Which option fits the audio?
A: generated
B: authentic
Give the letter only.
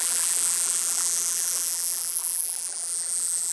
A